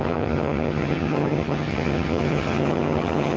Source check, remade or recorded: remade